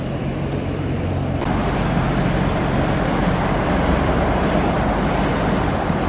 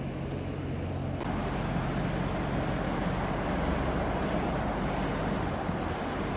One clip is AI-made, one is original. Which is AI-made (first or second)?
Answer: first